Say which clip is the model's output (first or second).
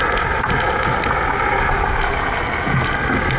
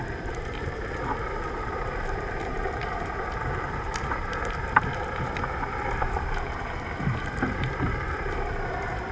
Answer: second